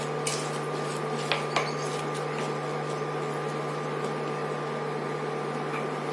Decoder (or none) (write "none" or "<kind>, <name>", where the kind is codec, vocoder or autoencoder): none